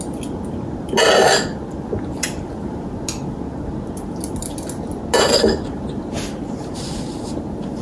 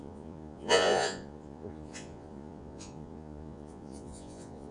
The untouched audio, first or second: first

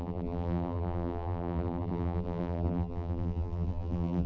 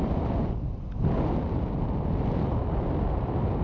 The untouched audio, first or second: second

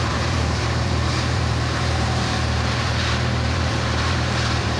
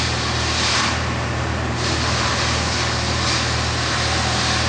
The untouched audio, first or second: second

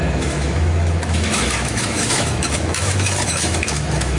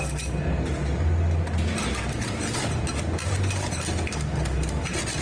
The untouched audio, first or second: second